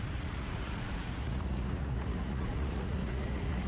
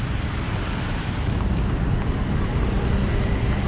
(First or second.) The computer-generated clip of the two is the first